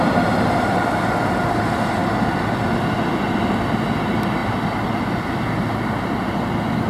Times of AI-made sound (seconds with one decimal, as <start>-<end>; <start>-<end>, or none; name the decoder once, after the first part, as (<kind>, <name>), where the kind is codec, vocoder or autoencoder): none

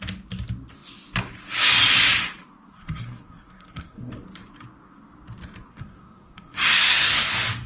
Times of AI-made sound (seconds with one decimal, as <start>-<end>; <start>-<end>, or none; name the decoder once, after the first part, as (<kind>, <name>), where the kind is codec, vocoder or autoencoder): 2.7-4.1 (codec, SNAC); 5.7-7.3

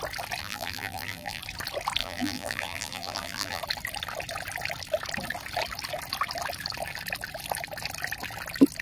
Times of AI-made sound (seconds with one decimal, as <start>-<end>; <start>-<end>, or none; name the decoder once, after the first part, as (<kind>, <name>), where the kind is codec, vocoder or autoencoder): 0.4-1.4 (vocoder, BigVGAN v2); 2.0-3.6

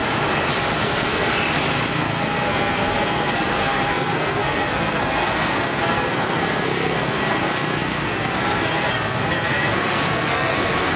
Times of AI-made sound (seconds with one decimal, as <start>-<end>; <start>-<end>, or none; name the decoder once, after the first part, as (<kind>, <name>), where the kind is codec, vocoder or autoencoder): 0.8-1.3 (codec, SNAC); 1.9-11.0

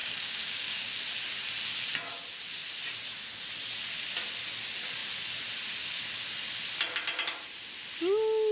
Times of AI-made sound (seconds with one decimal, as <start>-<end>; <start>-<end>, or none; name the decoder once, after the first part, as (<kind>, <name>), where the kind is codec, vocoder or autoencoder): 0.0-0.9 (codec, DAC)

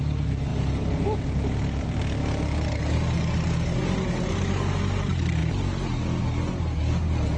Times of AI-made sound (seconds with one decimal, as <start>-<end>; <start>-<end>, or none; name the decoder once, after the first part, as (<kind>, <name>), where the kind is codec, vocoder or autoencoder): none

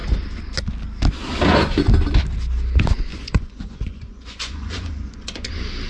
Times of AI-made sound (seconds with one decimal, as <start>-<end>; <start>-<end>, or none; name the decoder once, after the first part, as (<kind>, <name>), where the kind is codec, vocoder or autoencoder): 3.1-5.5 (vocoder, Vocos)

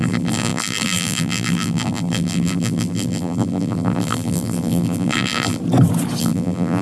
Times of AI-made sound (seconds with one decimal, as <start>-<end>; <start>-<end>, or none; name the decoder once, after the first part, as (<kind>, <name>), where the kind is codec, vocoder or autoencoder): 0.0-5.6 (vocoder, BigVGAN v2); 6.2-6.8